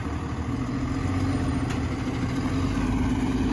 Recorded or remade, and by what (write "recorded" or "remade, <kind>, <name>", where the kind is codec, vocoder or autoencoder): recorded